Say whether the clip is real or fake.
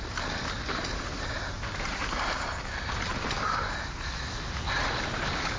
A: real